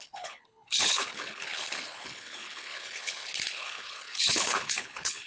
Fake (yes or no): yes